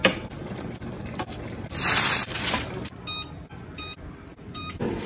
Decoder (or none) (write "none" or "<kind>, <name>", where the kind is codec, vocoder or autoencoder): vocoder, BigVGAN v2